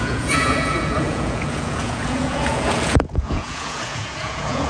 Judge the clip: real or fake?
fake